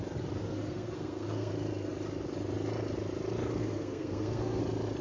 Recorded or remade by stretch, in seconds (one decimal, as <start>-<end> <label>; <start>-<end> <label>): 0.0-0.4 recorded; 0.4-1.5 remade; 1.5-3.6 recorded; 3.6-4.6 remade; 4.6-5.0 recorded